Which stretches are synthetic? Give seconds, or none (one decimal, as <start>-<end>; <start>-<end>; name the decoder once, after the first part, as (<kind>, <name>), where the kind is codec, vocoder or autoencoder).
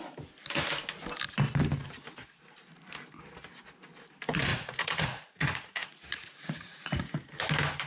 4.5-7.1 (vocoder, Vocos)